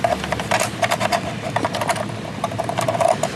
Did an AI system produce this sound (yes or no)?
no